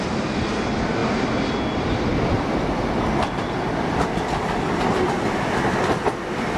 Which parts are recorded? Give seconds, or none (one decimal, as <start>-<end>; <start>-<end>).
0.0-1.0; 5.0-6.6